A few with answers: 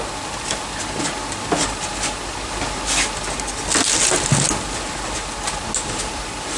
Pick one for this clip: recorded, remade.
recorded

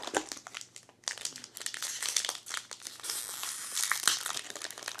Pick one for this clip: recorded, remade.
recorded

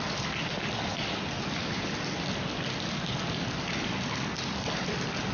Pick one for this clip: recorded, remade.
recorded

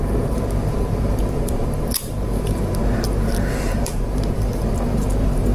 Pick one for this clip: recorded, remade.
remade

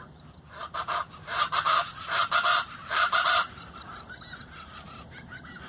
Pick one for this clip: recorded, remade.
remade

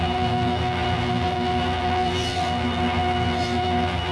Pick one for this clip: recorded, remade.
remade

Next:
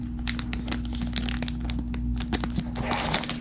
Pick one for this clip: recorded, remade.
recorded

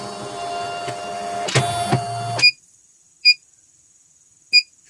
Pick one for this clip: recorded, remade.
recorded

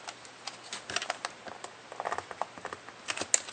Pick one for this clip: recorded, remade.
recorded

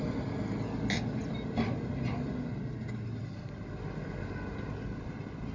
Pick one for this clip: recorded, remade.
recorded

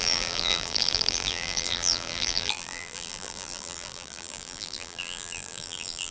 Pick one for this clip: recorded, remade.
remade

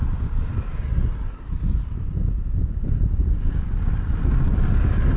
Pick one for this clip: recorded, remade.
remade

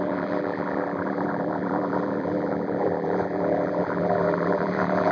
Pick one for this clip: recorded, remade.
remade